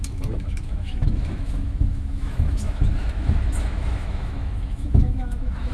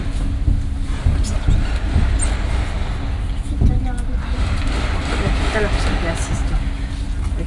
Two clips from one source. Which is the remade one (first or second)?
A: first